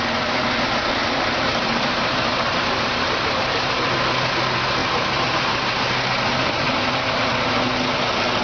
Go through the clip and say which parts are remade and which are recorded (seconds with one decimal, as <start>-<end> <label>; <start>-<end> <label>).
0.0-1.0 recorded; 1.0-3.9 remade; 3.9-4.8 recorded; 4.8-6.9 remade; 6.9-8.4 recorded